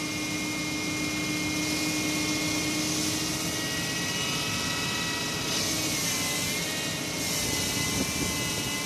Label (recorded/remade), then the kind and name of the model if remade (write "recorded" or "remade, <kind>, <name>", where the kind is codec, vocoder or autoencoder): recorded